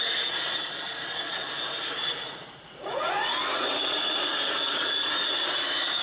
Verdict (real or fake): fake